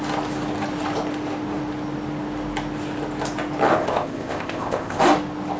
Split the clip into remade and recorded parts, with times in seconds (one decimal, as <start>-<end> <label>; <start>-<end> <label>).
0.0-3.7 recorded; 3.7-5.0 remade; 5.0-5.6 recorded